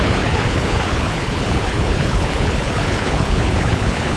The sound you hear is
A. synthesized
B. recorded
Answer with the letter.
A